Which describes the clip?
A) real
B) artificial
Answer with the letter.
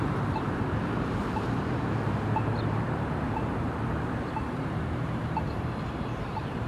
B